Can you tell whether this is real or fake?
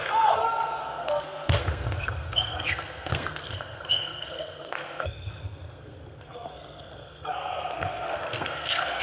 fake